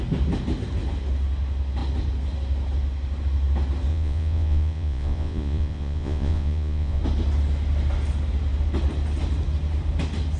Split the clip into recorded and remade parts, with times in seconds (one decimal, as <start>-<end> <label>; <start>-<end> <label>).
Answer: 0.0-3.9 recorded; 3.9-7.0 remade; 7.0-10.4 recorded